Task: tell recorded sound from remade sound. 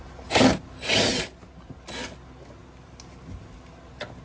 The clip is recorded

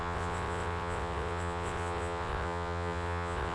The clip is remade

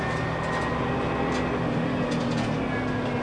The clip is recorded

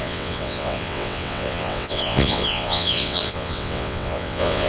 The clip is remade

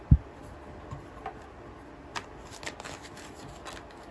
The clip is recorded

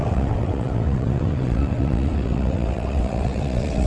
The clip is remade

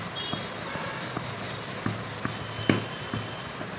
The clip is recorded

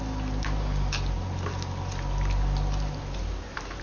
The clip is recorded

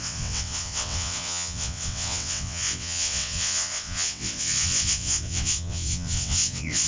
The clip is remade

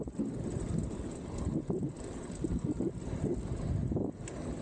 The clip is recorded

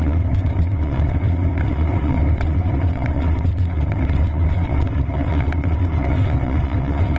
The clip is remade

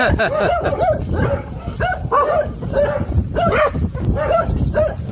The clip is recorded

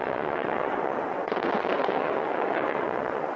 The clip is remade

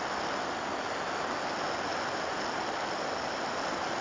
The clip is recorded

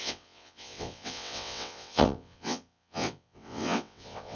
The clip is remade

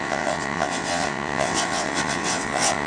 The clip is remade